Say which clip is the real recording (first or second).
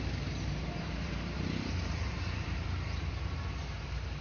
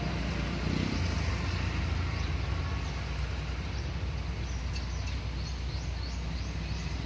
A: second